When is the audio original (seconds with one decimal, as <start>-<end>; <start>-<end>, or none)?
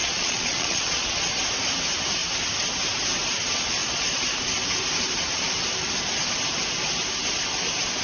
1.3-8.0